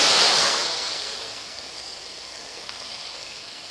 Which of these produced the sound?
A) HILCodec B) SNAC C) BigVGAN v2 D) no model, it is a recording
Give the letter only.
B